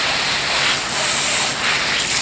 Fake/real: real